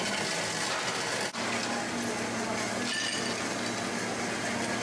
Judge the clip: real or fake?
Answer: real